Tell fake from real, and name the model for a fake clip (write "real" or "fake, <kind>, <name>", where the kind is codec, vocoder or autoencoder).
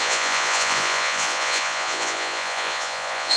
fake, vocoder, Vocos